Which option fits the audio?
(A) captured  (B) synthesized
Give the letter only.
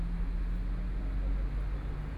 A